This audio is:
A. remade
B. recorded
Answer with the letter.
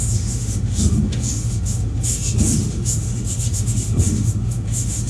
A